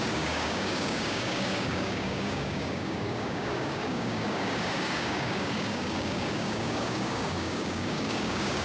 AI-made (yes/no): yes